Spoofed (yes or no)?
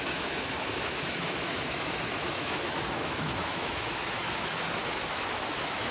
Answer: yes